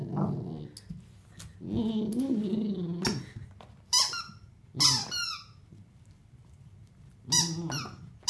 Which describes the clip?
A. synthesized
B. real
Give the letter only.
B